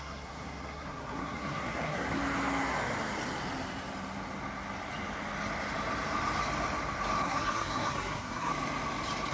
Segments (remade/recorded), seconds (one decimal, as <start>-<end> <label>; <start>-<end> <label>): 0.0-2.2 remade; 2.2-7.2 recorded; 7.2-8.5 remade; 8.5-9.3 recorded